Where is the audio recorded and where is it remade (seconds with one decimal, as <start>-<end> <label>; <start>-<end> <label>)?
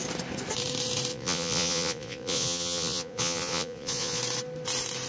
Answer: 0.0-1.1 recorded; 1.1-4.2 remade; 4.2-5.1 recorded